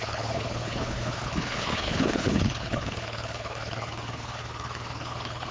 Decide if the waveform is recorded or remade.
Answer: remade